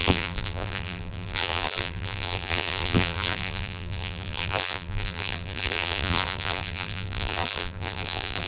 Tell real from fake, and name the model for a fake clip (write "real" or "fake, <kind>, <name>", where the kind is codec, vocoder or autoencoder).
fake, vocoder, BigVGAN v2